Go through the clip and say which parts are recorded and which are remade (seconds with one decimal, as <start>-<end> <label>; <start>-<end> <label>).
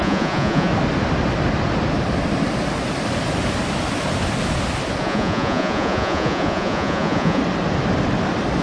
0.0-0.7 remade; 0.7-5.0 recorded; 5.0-7.4 remade; 7.4-8.6 recorded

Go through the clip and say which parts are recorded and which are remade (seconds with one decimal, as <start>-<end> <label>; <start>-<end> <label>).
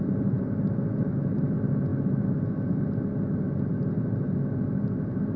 0.0-5.4 recorded